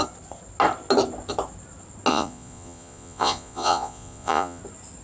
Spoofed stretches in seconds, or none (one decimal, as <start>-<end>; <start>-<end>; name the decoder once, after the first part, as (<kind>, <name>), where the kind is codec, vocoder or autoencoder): 2.1-4.6 (vocoder, Vocos)